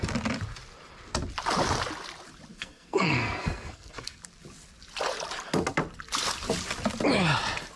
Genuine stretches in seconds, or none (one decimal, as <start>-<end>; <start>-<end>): 0.0-2.5; 4.2-7.8